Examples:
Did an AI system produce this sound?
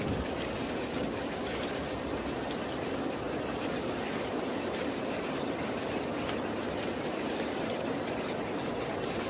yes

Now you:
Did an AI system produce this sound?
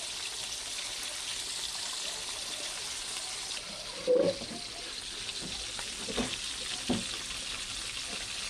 no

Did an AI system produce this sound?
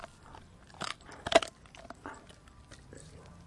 no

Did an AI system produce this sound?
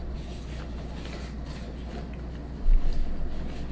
no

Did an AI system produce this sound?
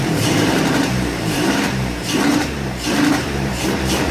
yes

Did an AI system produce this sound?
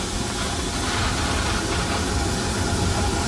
no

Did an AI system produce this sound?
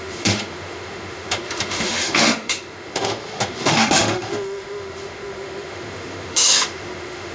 yes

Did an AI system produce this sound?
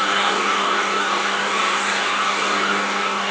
yes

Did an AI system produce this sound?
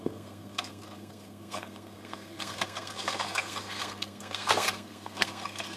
yes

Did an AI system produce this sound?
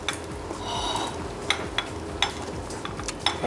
no